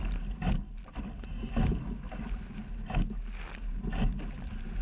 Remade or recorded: recorded